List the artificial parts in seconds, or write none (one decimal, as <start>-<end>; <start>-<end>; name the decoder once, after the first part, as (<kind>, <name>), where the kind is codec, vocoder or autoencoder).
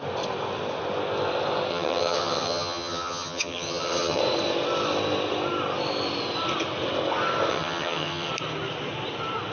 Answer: 1.7-4.2 (vocoder, HiFi-GAN); 7.5-8.3